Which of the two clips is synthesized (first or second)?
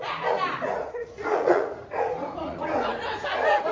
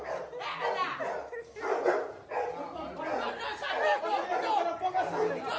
first